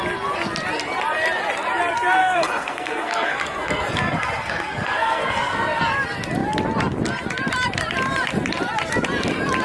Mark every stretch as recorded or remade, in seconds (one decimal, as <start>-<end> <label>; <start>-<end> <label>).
0.0-2.2 recorded; 2.2-5.8 remade; 5.8-9.6 recorded